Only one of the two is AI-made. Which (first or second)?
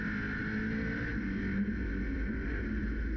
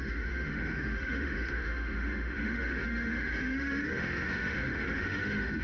second